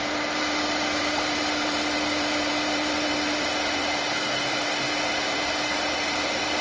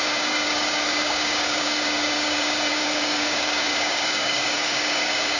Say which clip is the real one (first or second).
first